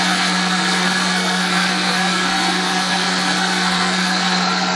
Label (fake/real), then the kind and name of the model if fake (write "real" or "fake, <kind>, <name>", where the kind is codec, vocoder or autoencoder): fake, codec, SNAC